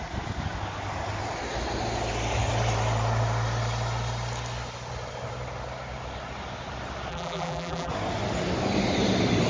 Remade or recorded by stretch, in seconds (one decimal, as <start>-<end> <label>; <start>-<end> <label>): 0.0-7.1 recorded; 7.1-7.9 remade; 7.9-9.5 recorded